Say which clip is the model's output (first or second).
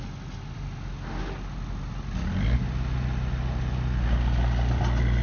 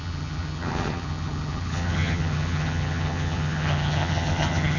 second